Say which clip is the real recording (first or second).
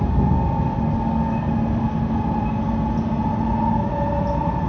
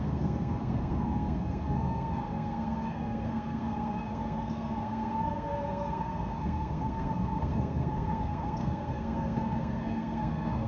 first